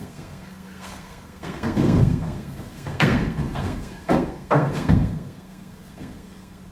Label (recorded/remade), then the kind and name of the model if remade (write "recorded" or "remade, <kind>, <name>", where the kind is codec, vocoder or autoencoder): remade, codec, SNAC